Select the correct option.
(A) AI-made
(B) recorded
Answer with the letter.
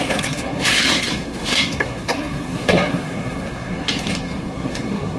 A